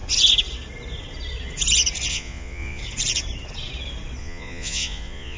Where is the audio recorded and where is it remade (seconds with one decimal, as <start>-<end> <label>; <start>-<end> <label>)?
0.0-2.1 recorded; 2.1-2.8 remade; 2.8-4.2 recorded; 4.2-5.4 remade

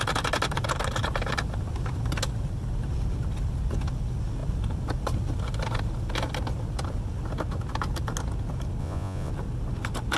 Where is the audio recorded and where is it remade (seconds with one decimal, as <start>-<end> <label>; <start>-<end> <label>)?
0.0-8.8 recorded; 8.8-9.3 remade; 9.3-10.2 recorded